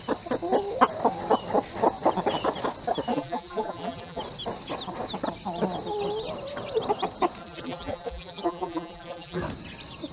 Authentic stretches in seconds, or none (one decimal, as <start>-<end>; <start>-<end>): 0.0-3.1; 4.2-7.4; 9.4-10.1